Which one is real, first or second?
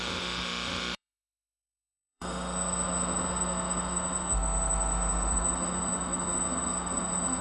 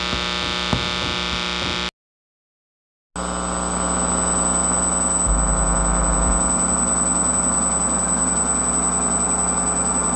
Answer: second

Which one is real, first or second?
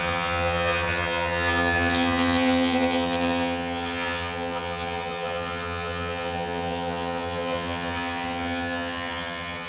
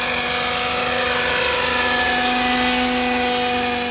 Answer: second